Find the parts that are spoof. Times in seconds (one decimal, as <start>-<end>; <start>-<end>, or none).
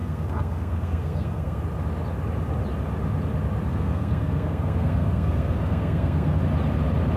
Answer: 0.0-1.6; 3.7-6.4